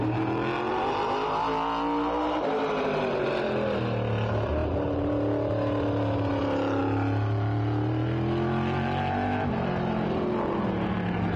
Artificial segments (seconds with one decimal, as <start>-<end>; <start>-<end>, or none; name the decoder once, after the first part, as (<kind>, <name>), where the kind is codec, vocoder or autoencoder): none